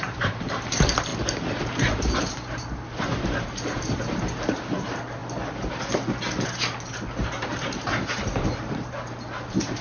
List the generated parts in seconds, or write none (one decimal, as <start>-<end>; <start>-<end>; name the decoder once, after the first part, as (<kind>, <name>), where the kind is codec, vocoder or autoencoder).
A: 0.0-1.1 (vocoder, BigVGAN v2); 1.6-5.2; 6.5-9.8